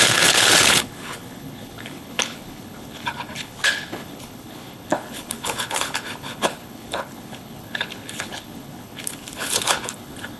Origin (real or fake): fake